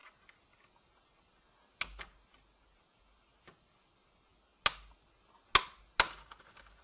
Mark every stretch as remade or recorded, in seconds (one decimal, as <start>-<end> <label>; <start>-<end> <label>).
0.0-6.8 recorded